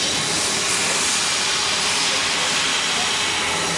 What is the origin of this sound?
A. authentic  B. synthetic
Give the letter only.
A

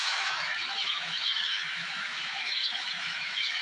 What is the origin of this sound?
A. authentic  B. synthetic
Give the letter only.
B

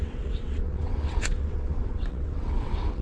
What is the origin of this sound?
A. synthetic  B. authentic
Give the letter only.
A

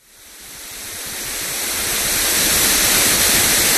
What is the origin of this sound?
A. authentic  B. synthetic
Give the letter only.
A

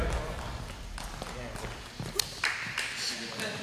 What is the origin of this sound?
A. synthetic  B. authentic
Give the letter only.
B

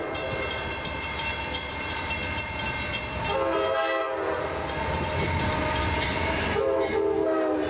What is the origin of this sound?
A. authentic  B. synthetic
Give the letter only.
A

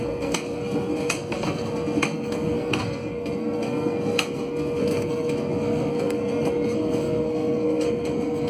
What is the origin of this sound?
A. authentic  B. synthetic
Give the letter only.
B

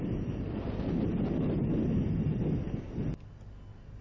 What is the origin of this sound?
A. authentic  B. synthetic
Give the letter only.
A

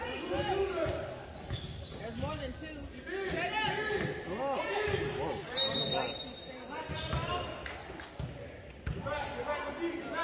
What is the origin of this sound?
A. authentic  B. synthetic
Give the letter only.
A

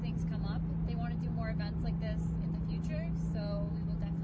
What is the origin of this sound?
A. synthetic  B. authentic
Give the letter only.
B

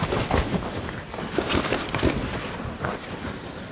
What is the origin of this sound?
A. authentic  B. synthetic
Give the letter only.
A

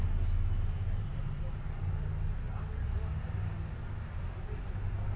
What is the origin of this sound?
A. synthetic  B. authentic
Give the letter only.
B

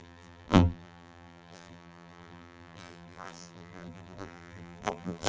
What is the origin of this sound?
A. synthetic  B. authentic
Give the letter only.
A